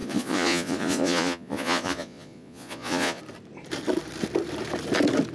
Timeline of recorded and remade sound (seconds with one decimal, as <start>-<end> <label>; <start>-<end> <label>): 0.0-3.2 remade; 3.2-5.3 recorded